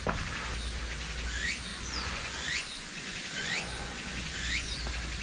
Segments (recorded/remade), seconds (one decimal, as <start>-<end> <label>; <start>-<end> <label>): 0.0-1.7 recorded; 1.7-4.8 remade; 4.8-5.2 recorded